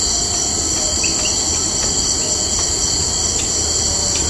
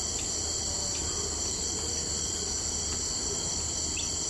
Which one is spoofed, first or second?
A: second